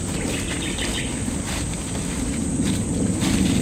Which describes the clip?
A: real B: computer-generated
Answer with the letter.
A